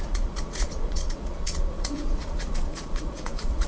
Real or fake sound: fake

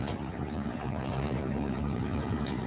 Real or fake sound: fake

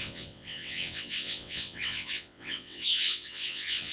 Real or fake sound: fake